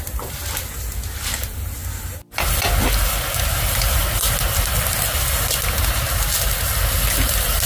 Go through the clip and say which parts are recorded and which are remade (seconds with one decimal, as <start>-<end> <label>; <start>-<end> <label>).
0.0-7.7 recorded